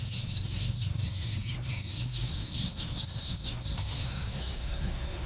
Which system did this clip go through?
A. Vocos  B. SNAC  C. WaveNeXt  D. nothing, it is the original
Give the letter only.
B